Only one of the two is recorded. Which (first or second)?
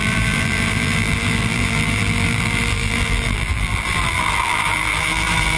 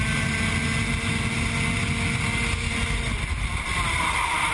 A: second